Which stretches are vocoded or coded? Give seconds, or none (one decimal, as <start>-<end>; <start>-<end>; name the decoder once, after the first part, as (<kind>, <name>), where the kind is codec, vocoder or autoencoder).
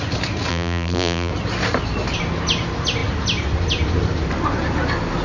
0.5-1.3 (vocoder, BigVGAN v2)